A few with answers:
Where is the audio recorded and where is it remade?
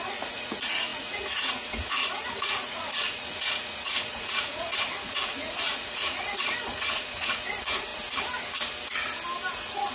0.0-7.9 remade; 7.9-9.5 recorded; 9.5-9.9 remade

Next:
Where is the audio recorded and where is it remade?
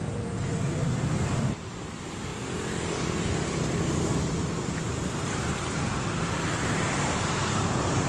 0.0-2.3 remade; 2.3-4.6 recorded; 4.6-8.1 remade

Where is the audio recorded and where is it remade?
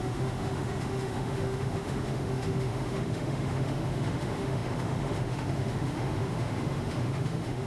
0.0-7.7 remade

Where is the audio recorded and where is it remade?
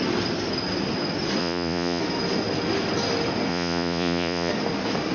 0.0-1.4 recorded; 1.4-2.0 remade; 2.0-3.5 recorded; 3.5-4.5 remade; 4.5-5.1 recorded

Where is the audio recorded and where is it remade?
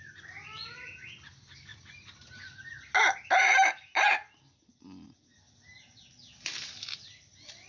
0.0-7.7 recorded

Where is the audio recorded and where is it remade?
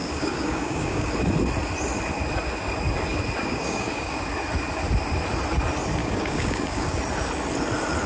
0.0-1.1 remade; 1.1-3.4 recorded; 3.4-4.2 remade; 4.2-6.0 recorded; 6.0-7.0 remade; 7.0-8.1 recorded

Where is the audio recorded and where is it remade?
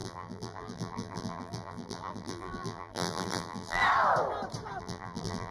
0.0-3.8 remade; 3.8-4.8 recorded; 4.8-5.5 remade